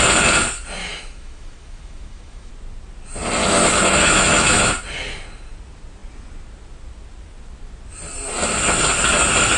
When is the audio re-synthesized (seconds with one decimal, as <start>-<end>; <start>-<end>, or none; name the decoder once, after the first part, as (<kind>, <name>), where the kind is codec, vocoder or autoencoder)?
0.8-2.5 (autoencoder, DAC-VAE); 3.4-4.7